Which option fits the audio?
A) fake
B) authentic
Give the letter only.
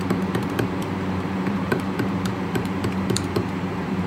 A